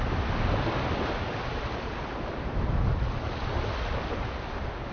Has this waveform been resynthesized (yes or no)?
no